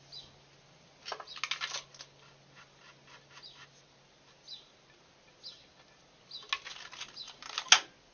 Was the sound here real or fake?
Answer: real